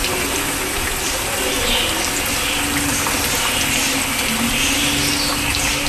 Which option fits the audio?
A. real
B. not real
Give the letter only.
A